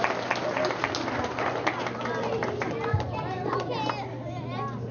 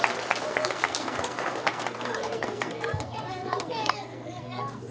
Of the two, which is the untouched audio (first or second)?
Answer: first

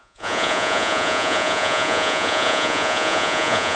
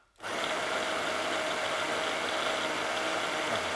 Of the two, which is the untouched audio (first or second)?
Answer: second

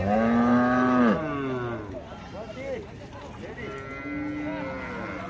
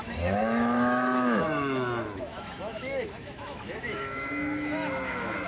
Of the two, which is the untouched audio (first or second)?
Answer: first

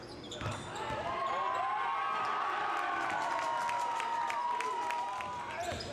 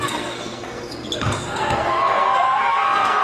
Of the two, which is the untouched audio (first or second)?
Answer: first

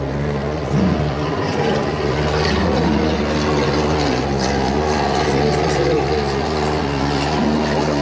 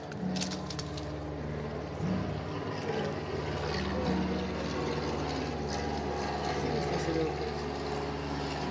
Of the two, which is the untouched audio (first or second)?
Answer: second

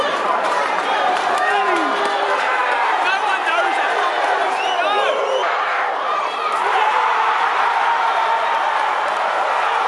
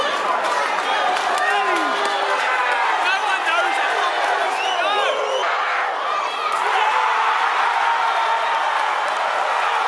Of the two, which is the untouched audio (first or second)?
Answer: second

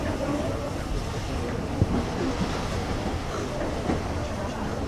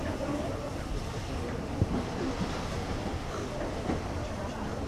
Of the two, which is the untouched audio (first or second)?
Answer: first